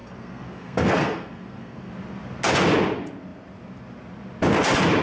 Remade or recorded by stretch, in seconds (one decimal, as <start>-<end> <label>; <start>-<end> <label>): 0.0-1.9 remade; 1.9-5.0 recorded